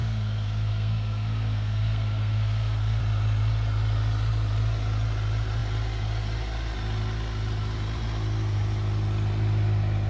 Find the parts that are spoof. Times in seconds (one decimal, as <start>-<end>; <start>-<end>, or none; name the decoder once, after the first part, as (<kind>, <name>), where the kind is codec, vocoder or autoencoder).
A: 0.0-3.0 (codec, SNAC)